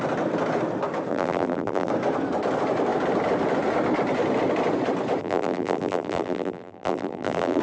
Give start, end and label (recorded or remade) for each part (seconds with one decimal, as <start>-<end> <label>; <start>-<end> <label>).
0.0-1.1 recorded; 1.1-1.9 remade; 1.9-5.2 recorded; 5.2-7.6 remade